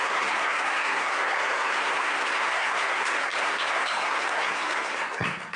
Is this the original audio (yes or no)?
no